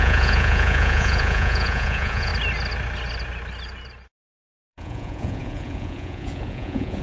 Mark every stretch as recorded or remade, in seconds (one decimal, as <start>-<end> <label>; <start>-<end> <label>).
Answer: 0.0-2.3 remade; 2.3-4.4 recorded; 4.4-7.0 remade